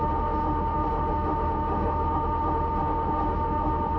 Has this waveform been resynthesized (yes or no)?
yes